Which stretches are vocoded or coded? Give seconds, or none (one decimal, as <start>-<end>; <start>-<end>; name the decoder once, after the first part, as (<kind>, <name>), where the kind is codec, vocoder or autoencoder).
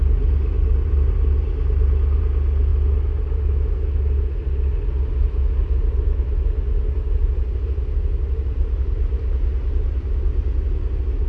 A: none